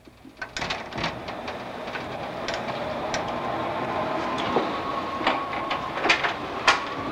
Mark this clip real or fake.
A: real